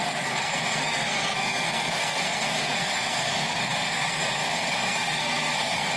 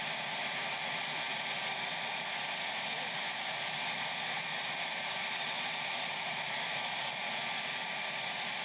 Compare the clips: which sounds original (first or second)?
second